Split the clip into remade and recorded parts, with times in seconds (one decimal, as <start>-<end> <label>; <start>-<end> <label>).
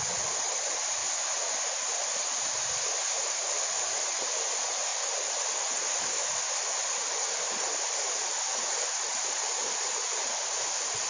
0.0-4.9 remade; 4.9-6.7 recorded; 6.7-11.1 remade